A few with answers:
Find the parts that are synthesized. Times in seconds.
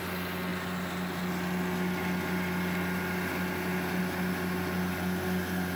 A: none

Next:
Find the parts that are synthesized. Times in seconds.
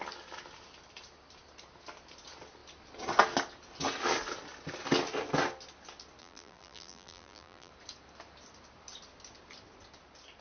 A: 6.2-7.7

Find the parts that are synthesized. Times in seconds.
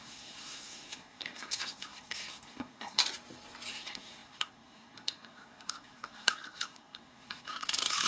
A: 0.0-3.0; 3.7-8.1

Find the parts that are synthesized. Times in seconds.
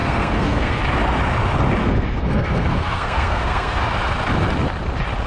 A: 0.0-0.8; 1.8-3.8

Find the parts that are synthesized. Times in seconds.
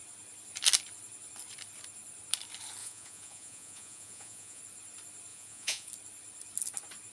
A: 2.8-4.6; 5.3-5.9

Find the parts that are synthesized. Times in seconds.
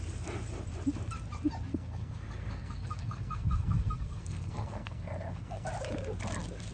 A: 1.7-5.7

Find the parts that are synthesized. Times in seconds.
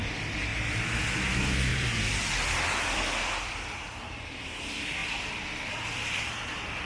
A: 1.7-3.8; 5.0-6.3